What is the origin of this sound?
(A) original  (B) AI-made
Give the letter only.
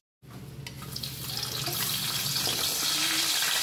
A